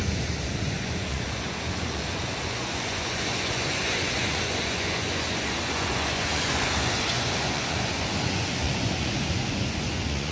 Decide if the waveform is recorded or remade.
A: remade